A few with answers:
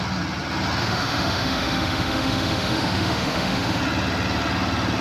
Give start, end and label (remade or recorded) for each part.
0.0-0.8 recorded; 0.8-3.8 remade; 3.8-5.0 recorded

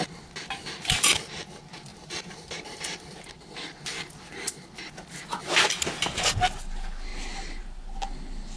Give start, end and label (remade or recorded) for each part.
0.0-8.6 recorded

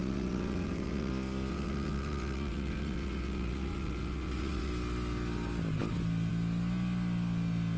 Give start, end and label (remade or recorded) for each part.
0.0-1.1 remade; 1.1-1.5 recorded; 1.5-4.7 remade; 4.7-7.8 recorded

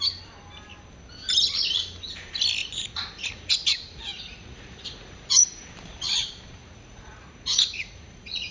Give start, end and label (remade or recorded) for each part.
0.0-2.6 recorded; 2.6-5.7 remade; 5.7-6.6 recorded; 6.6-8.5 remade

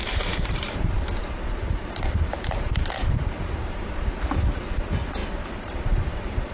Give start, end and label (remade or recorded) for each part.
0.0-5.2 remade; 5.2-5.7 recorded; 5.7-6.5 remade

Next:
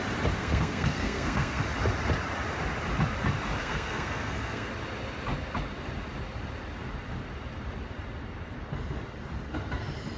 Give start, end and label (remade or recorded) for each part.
0.0-0.4 recorded; 0.4-1.6 remade; 1.6-3.6 recorded; 3.6-4.7 remade; 4.7-10.2 recorded

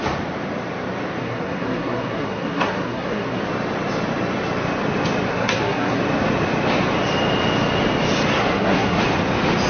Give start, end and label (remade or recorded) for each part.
0.0-1.2 recorded; 1.2-3.4 remade; 3.4-5.3 recorded; 5.3-6.0 remade; 6.0-8.4 recorded; 8.4-9.0 remade; 9.0-9.7 recorded

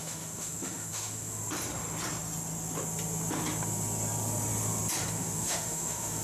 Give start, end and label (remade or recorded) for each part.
0.0-1.4 remade; 1.4-5.1 recorded; 5.1-6.2 remade